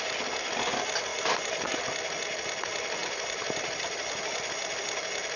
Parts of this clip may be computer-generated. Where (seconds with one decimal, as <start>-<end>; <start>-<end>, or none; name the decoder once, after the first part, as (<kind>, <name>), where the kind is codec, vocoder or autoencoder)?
1.1-1.8 (vocoder, BigVGAN v2); 3.0-4.1